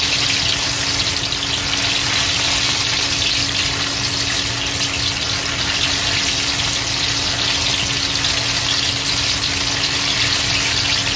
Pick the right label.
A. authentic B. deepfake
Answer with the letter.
A